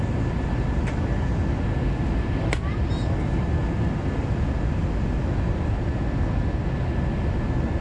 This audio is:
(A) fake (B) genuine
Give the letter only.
B